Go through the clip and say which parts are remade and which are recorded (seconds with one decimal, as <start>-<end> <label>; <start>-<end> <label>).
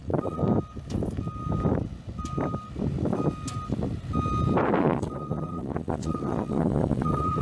0.0-0.4 remade; 0.4-4.8 recorded; 4.8-7.4 remade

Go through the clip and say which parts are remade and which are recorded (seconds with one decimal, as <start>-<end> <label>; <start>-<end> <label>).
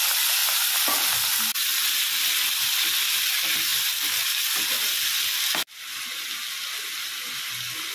0.0-7.9 recorded